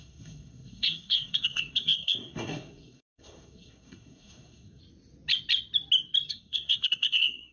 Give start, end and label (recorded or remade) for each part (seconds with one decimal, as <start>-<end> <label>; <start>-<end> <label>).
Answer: 0.0-4.8 remade; 4.8-6.3 recorded; 6.3-7.5 remade

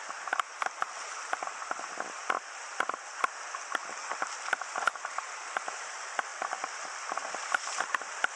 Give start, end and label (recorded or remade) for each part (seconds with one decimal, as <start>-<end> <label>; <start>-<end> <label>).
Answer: 0.0-8.4 recorded